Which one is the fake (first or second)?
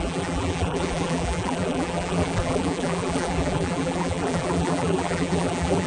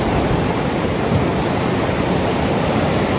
first